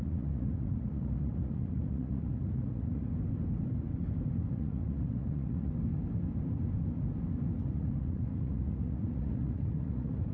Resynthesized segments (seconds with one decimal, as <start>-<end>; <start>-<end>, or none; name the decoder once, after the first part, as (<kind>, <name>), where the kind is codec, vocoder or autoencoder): 0.0-3.1 (vocoder, Vocos); 4.5-5.7; 7.6-10.3